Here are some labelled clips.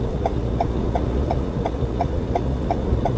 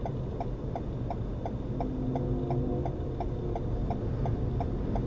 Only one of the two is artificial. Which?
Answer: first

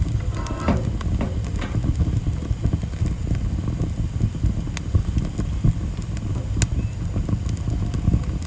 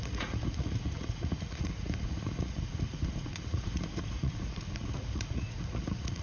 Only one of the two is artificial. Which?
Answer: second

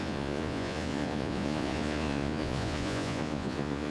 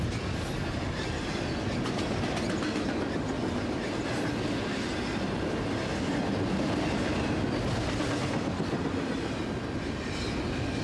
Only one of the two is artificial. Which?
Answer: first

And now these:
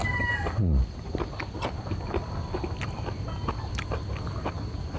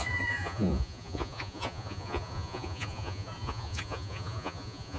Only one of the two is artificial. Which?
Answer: second